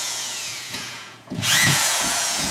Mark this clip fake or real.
fake